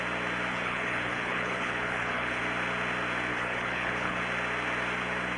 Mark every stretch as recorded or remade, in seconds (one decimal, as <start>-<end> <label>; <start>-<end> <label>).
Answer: 0.0-0.5 recorded; 0.5-2.4 remade; 2.4-3.3 recorded; 3.3-4.2 remade; 4.2-5.4 recorded